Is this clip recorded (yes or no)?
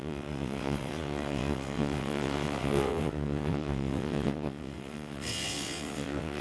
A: no